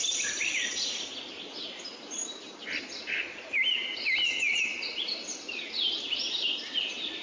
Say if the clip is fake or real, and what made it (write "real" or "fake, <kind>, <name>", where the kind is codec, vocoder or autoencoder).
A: fake, vocoder, BigVGAN v2